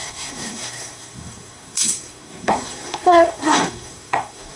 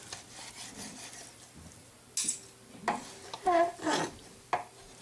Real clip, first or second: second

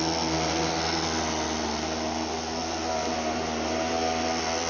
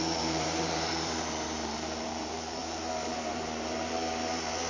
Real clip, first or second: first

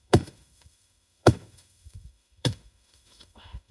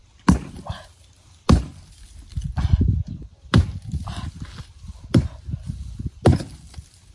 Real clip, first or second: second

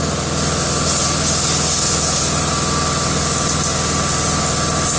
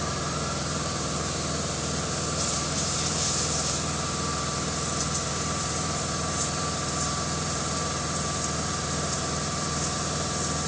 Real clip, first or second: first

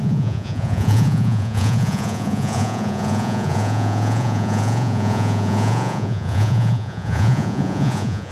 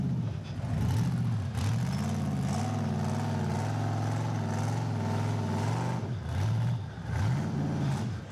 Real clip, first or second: second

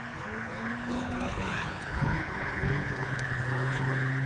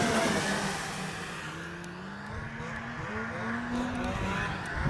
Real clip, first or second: second